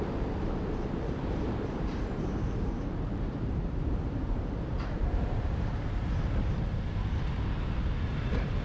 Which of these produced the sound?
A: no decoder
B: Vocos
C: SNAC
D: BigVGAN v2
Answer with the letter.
D